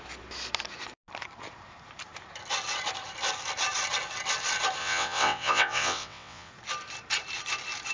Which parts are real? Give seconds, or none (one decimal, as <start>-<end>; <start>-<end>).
0.0-4.8; 6.5-7.9